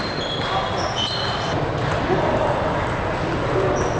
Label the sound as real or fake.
real